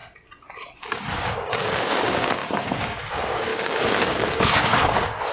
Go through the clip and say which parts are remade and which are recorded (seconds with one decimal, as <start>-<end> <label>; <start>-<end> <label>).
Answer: 0.0-1.3 recorded; 1.3-5.3 remade